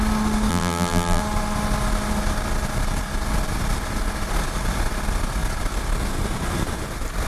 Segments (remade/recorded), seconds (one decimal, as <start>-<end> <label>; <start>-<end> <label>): 0.0-0.5 recorded; 0.5-1.2 remade; 1.2-7.3 recorded

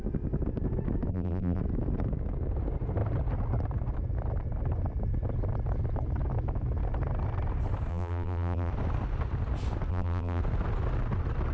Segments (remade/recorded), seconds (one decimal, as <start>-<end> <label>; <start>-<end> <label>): 0.0-1.1 recorded; 1.1-1.6 remade; 1.6-7.9 recorded; 7.9-8.7 remade; 8.7-9.9 recorded; 9.9-10.4 remade; 10.4-11.5 recorded

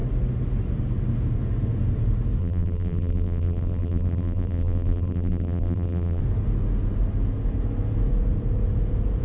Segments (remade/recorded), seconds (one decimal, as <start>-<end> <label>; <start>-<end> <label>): 0.0-2.4 recorded; 2.4-6.2 remade; 6.2-9.2 recorded

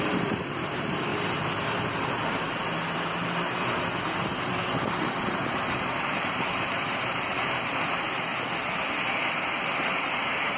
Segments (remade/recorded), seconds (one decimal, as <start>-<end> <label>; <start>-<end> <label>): 0.0-1.1 remade; 1.1-5.7 recorded; 5.7-8.3 remade; 8.3-10.6 recorded